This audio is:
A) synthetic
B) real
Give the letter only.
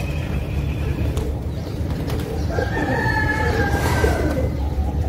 A